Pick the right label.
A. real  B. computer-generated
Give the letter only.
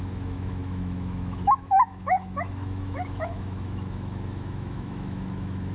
B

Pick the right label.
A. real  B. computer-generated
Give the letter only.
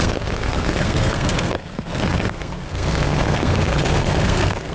B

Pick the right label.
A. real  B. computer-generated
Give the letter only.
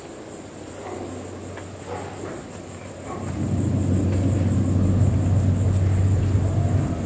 A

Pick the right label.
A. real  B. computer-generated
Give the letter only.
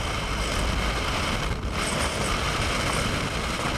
A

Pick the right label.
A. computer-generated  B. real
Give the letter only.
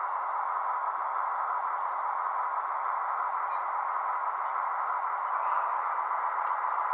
B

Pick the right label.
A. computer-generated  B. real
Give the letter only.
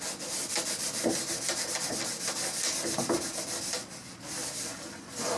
B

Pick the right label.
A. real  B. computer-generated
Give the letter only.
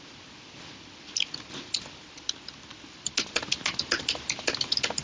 A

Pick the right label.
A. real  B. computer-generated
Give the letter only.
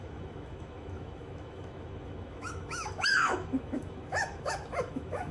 B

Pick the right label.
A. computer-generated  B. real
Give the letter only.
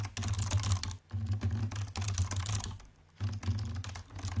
B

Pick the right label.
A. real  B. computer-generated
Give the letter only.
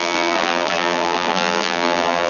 B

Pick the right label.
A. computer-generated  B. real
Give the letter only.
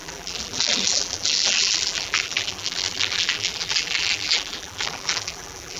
A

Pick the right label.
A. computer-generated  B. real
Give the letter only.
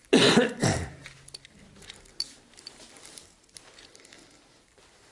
B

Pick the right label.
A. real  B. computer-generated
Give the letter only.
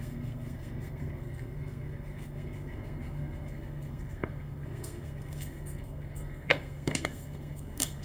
B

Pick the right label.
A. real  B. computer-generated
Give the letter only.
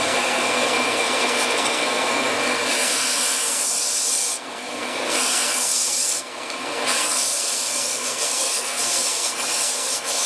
B